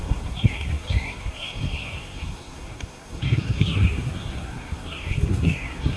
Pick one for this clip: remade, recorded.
remade